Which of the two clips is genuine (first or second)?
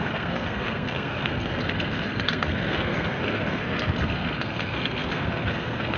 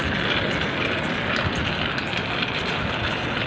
second